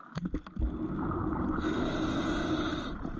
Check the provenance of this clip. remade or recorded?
recorded